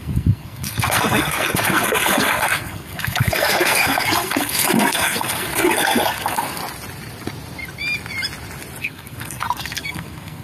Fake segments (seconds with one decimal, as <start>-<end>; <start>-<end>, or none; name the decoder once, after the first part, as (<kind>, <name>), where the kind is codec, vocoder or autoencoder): 0.0-6.6 (codec, SNAC); 8.8-10.4